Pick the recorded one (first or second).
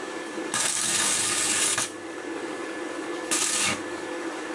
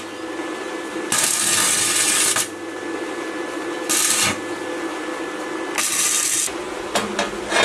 second